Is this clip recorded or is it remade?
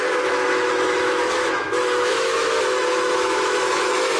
remade